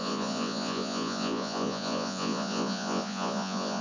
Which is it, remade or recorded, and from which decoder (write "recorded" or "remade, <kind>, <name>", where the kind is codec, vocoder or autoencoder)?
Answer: remade, vocoder, Vocos